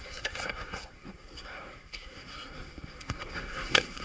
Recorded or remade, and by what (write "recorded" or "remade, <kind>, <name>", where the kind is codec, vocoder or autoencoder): remade, codec, SNAC